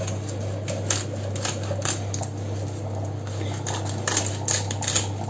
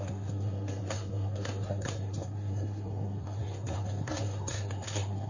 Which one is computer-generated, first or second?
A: second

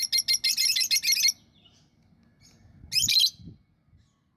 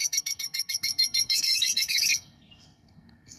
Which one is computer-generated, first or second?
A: second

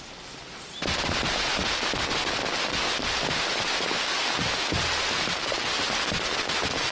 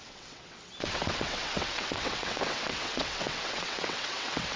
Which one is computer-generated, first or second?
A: second